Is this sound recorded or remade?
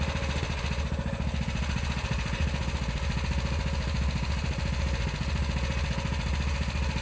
recorded